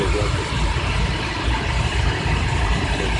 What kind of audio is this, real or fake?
real